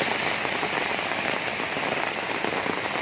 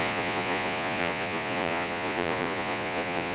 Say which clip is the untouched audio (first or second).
first